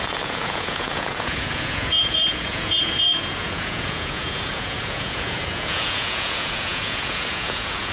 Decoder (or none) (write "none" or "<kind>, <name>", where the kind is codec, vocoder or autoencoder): vocoder, Vocos